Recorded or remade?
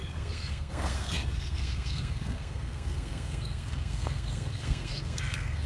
remade